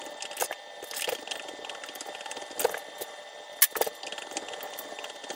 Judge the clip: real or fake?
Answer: real